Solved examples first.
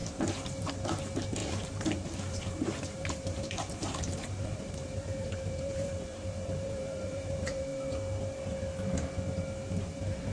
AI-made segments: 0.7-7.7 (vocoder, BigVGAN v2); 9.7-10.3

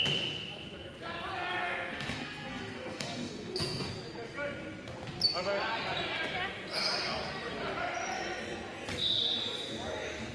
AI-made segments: 1.6-3.9 (codec, SNAC)

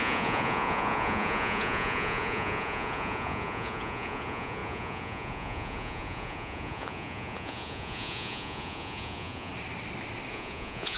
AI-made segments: 0.0-9.5 (vocoder, Vocos); 10.3-11.0

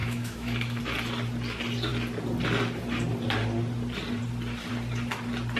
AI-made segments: 0.0-0.8 (autoencoder, DAC-VAE)

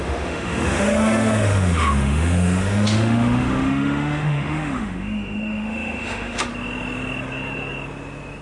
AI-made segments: 0.0-6.5 (autoencoder, DAC-VAE)

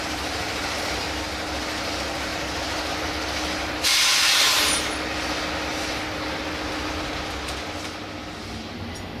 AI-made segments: none

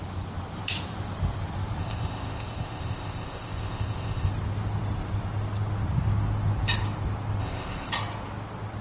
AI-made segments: 1.8-4.3 (codec, ZipCodec); 7.4-7.9